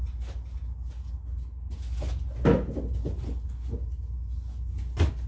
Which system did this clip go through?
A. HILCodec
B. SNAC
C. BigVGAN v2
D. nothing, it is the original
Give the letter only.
D